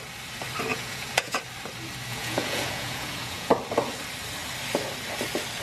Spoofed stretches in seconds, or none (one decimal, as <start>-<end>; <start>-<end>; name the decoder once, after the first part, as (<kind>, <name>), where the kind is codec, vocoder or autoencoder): 0.7-1.4 (vocoder, Vocos); 2.1-3.5